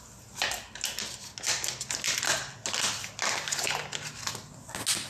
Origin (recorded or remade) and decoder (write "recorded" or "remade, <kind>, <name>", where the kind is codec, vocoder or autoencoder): recorded